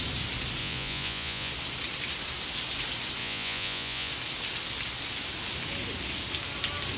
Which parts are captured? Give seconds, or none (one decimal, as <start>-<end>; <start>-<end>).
0.0-0.6; 1.5-3.2; 4.1-7.0